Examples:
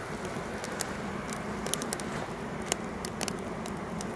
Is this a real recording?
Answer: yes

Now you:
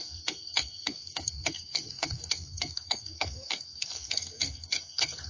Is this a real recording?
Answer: no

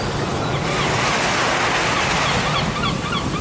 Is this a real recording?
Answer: yes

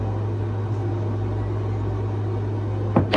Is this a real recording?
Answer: yes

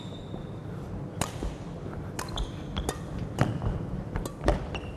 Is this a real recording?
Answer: yes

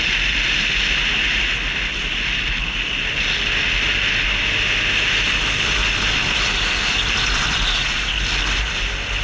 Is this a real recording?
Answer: yes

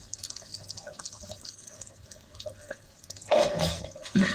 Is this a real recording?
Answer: no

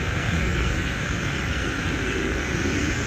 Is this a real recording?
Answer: no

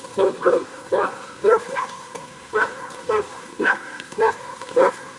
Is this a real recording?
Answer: no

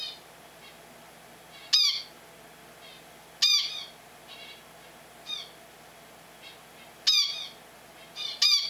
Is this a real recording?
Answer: yes